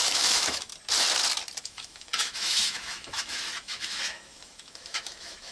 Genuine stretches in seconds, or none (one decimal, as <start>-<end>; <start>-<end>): 0.7-1.6